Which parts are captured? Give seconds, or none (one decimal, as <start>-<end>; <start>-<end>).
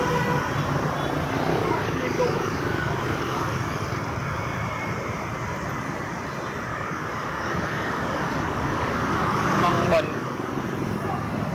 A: 0.0-1.5; 3.8-6.7; 10.6-11.5